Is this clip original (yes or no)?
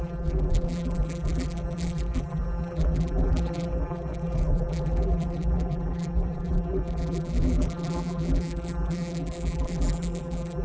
no